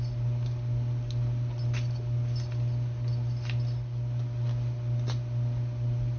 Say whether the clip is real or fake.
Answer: real